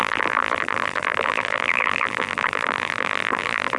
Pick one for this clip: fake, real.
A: fake